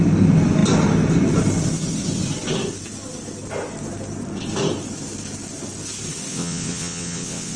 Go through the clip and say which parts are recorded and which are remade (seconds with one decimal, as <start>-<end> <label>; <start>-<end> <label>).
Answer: 0.0-6.3 recorded; 6.3-7.6 remade